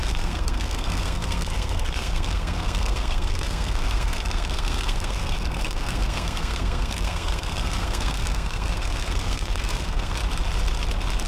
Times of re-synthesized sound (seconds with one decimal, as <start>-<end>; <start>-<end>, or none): 0.0-10.2

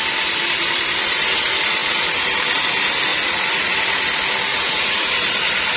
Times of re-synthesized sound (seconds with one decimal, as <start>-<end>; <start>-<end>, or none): 3.1-3.7; 4.5-5.1

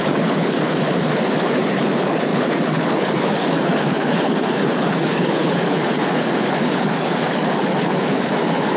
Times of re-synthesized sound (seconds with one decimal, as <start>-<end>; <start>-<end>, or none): 0.0-8.8

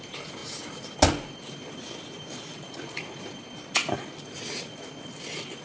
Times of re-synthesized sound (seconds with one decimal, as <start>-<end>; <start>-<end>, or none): none

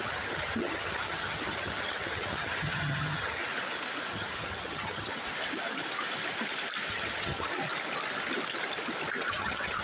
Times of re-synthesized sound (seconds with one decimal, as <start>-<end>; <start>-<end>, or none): 0.0-3.4; 4.1-5.1; 6.9-7.5; 9.3-9.8